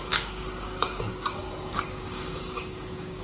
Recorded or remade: remade